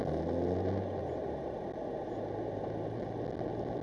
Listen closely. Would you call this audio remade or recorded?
recorded